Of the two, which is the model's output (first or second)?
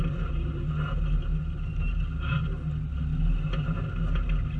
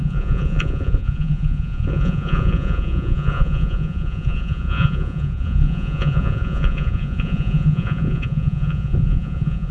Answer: second